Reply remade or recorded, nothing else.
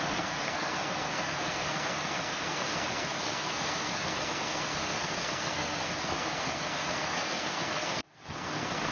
remade